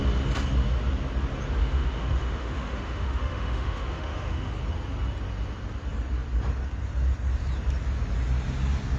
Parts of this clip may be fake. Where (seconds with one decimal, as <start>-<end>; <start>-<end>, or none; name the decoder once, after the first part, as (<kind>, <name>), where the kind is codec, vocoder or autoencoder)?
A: 1.6-4.5 (autoencoder, DAC-VAE)